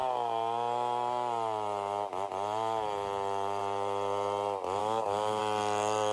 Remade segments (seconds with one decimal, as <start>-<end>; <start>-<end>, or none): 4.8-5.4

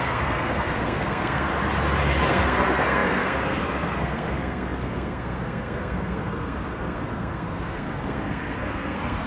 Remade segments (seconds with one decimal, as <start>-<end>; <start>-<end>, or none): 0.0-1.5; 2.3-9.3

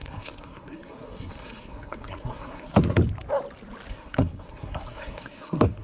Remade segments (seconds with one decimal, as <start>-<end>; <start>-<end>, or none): 0.0-3.0; 3.9-5.8

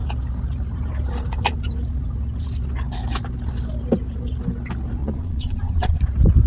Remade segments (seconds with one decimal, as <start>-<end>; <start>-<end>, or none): 5.0-6.0

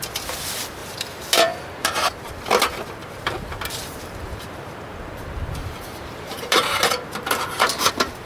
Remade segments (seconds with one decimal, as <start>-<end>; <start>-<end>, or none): 0.8-2.3; 3.0-7.9

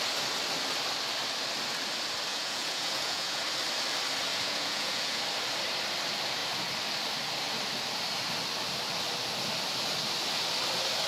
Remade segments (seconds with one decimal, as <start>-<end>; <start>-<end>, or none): 2.3-3.4; 4.3-5.2